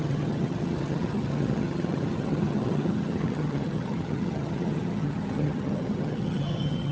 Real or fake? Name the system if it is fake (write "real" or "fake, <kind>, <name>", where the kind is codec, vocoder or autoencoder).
fake, vocoder, HiFi-GAN